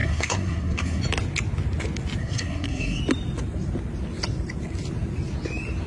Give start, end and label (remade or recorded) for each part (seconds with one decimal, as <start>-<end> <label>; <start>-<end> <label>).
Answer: 0.0-1.0 remade; 1.0-2.2 recorded; 2.2-3.0 remade; 3.0-5.9 recorded